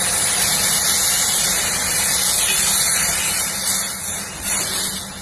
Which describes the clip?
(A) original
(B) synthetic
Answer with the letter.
A